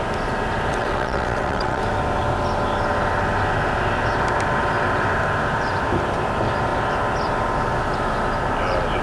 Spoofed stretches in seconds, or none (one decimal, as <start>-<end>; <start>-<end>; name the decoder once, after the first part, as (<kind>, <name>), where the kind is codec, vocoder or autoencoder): 0.7-1.8 (vocoder, WaveNeXt)